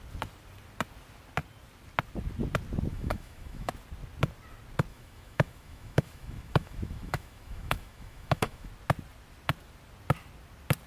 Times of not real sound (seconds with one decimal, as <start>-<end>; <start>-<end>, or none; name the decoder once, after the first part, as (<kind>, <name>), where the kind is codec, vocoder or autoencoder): 2.9-3.7 (autoencoder, DAC-VAE); 4.9-8.7